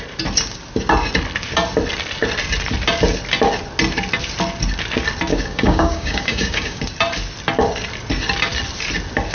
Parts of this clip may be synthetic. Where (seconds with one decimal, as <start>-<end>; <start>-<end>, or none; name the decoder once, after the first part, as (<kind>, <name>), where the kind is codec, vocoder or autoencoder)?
5.3-6.8 (codec, DAC)